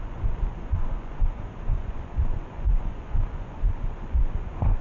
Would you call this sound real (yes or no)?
no